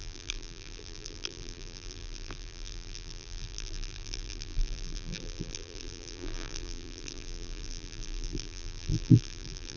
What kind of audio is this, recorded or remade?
remade